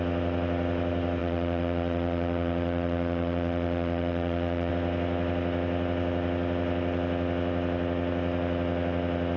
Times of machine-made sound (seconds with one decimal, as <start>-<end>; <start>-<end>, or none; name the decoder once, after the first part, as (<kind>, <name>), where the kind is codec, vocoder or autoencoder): 1.2-4.7 (vocoder, Vocos)